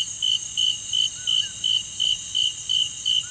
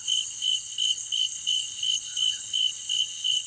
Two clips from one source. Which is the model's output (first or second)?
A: second